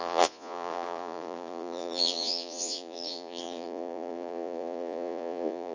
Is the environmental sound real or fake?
fake